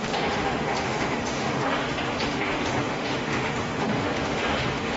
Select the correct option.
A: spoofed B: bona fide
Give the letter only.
A